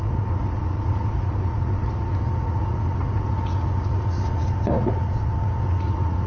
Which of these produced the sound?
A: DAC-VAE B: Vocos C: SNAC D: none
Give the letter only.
B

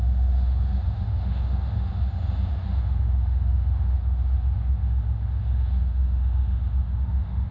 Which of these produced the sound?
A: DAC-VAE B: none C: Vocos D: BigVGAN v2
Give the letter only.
A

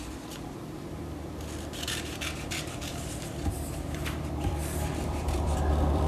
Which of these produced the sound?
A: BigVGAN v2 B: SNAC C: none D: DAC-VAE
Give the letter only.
A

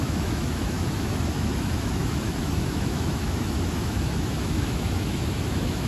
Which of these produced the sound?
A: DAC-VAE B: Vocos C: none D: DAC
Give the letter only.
A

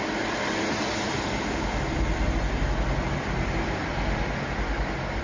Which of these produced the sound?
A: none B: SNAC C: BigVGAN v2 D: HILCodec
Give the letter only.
C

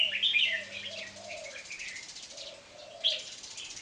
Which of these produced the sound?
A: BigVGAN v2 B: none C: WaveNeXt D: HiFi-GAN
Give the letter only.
A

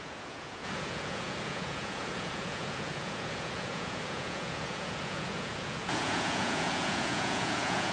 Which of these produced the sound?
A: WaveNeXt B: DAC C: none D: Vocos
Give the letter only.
D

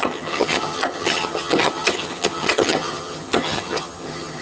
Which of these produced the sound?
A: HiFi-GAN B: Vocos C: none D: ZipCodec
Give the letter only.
A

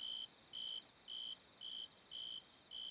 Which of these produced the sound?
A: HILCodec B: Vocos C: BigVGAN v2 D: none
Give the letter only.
D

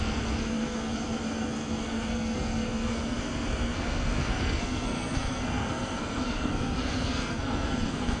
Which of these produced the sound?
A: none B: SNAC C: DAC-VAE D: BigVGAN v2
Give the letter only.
B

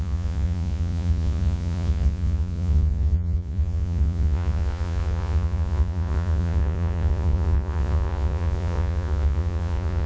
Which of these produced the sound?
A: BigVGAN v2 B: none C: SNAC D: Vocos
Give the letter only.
D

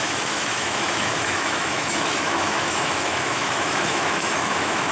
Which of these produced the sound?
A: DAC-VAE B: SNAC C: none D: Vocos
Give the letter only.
A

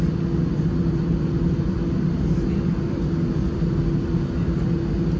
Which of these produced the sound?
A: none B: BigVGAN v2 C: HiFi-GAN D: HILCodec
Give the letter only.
A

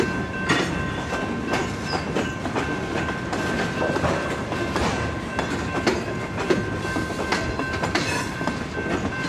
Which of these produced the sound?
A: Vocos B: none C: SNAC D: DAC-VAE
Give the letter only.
B